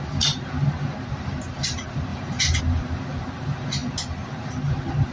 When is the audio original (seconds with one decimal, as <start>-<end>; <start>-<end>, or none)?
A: 0.0-2.1; 2.6-5.1